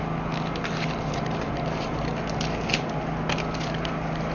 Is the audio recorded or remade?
recorded